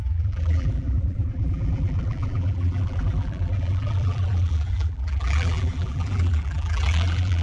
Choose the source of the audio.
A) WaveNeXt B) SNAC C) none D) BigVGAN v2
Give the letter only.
D